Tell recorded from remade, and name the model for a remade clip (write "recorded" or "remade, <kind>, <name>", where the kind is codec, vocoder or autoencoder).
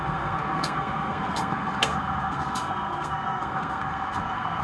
remade, codec, SNAC